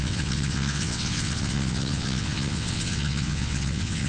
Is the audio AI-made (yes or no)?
yes